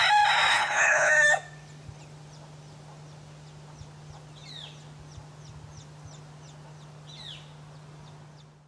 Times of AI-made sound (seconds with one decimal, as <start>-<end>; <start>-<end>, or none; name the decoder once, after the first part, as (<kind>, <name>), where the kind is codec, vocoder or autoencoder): 0.5-1.1 (codec, HILCodec)

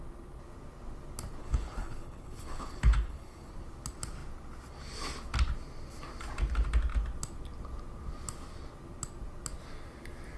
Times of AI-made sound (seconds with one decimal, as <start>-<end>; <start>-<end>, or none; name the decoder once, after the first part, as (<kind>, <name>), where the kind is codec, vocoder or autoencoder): 1.4-3.5 (codec, HILCodec)

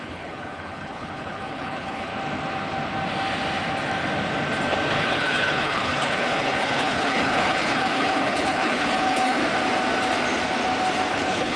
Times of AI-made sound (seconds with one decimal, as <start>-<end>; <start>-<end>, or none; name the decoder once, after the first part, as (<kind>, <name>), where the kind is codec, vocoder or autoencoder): 0.0-2.1 (codec, HILCodec); 5.0-9.4; 11.1-11.6